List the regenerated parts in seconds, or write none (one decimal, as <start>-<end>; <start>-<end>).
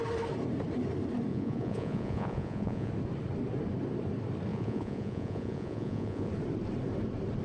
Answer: 1.3-2.9; 4.5-6.3